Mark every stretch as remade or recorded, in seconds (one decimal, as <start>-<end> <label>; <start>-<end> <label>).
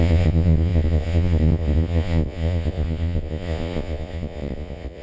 0.0-5.0 remade